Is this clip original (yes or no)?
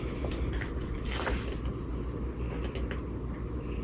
yes